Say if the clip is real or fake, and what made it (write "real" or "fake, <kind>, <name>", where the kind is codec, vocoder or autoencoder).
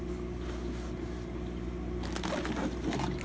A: real